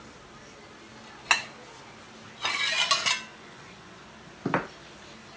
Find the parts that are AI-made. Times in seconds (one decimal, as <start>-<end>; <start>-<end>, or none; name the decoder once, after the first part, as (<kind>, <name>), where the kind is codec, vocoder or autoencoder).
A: 3.3-4.1 (vocoder, Vocos)